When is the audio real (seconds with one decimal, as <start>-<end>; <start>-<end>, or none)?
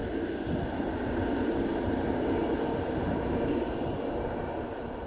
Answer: 0.0-1.7